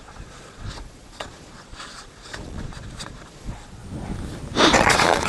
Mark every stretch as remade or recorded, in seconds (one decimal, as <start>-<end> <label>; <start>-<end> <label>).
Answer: 0.0-3.8 remade; 3.8-4.8 recorded; 4.8-5.3 remade